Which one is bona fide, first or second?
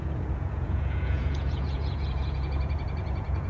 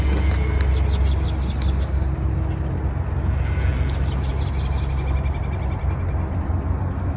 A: second